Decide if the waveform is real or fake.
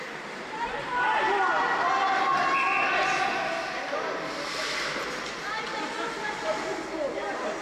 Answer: real